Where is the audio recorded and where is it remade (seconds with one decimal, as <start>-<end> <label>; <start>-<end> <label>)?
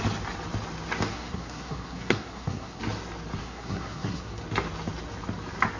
0.0-1.1 recorded; 1.1-2.8 remade; 2.8-3.4 recorded; 3.4-4.4 remade; 4.4-5.8 recorded